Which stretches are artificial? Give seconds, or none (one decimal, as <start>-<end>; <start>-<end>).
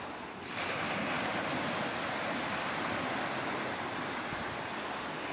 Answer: none